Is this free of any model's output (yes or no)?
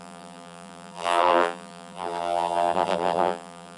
no